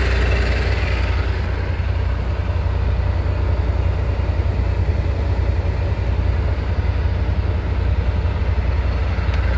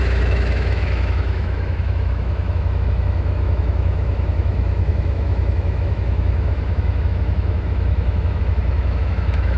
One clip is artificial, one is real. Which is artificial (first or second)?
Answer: second